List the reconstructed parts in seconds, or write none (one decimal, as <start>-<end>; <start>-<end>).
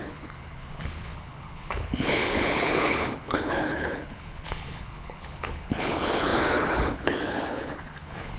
0.0-8.4